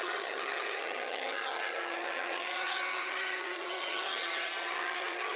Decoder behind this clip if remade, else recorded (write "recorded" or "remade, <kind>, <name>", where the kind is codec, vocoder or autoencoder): remade, vocoder, HiFi-GAN